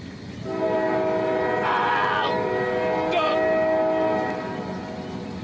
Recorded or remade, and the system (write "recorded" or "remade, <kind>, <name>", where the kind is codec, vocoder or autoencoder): recorded